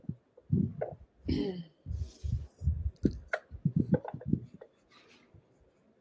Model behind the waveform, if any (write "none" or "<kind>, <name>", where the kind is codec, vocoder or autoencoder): none